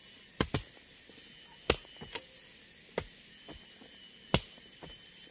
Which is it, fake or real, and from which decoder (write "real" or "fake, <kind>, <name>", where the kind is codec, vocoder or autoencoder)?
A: real